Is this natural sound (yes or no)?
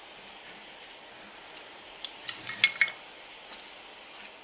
yes